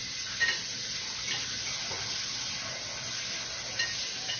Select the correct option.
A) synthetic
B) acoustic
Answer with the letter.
B